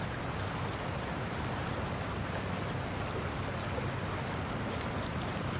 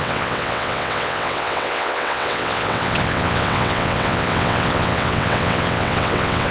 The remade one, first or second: second